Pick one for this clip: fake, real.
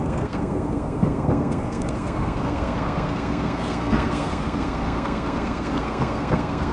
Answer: fake